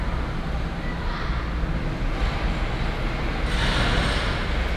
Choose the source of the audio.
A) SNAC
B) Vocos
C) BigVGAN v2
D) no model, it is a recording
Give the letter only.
D